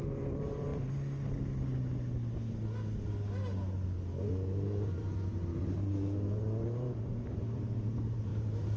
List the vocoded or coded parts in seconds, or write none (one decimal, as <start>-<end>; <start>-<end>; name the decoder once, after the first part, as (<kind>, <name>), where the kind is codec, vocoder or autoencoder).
0.0-0.7 (vocoder, BigVGAN v2); 4.3-8.8